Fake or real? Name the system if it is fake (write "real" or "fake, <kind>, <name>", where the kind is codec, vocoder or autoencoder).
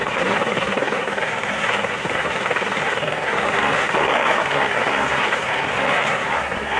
fake, codec, SNAC